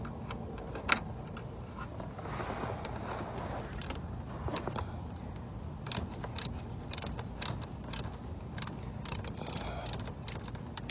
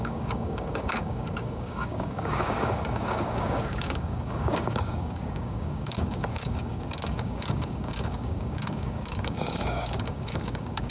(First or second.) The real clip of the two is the first